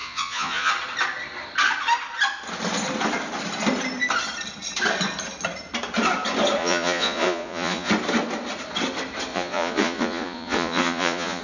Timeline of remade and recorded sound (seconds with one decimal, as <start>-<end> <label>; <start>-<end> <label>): 0.0-0.7 remade; 0.7-6.6 recorded; 6.6-7.9 remade; 7.9-9.3 recorded; 9.3-11.4 remade